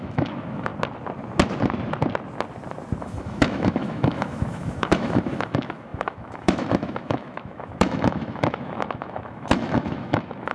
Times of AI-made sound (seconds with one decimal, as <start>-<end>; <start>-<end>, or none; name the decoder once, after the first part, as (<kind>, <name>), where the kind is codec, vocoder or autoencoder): 0.0-0.7 (autoencoder, DAC-VAE); 3.0-10.5